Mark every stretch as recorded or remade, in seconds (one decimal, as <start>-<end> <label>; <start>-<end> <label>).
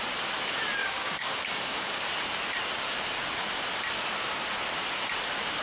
0.0-0.8 recorded; 0.8-2.0 remade; 2.0-5.6 recorded